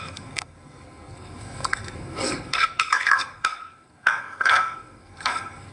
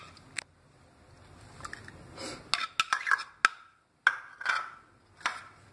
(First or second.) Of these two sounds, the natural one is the second